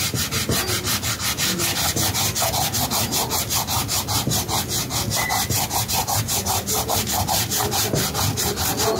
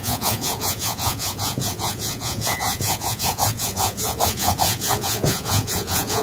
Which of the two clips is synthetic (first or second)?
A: second